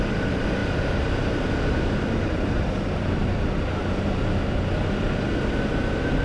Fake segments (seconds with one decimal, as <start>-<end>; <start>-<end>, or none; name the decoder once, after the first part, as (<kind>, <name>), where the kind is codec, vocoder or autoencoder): none